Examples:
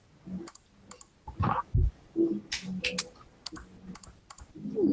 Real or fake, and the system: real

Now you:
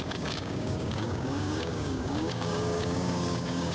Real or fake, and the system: fake, codec, DAC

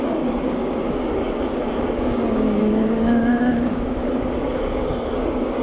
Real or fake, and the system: fake, codec, DAC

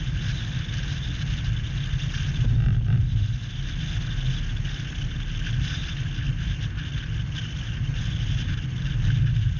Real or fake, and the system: real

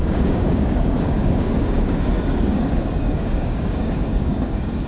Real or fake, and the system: fake, codec, DAC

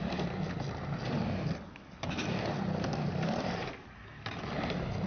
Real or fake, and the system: real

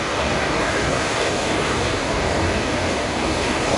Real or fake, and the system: fake, codec, DAC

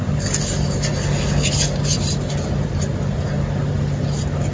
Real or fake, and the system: real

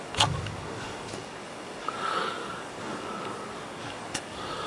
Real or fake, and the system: fake, codec, DAC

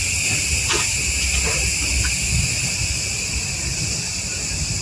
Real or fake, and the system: real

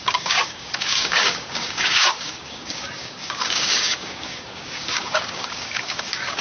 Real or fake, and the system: fake, codec, DAC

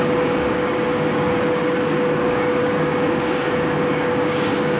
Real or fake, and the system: fake, codec, DAC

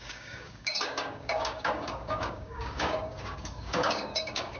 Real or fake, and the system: fake, codec, DAC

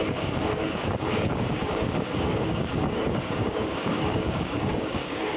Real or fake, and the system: fake, codec, DAC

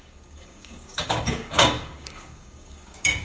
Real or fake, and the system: fake, codec, DAC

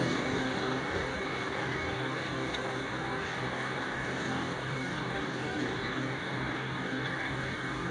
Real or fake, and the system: fake, codec, DAC